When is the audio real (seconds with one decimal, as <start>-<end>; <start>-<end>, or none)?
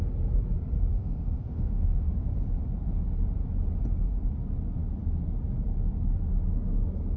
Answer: 0.0-0.9; 2.1-7.2